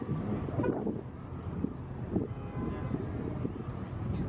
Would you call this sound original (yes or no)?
yes